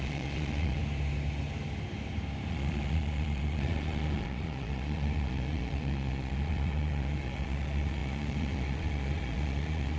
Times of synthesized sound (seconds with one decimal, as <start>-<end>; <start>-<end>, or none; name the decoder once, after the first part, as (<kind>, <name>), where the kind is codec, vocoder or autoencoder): 0.0-0.8 (vocoder, Vocos); 2.5-10.0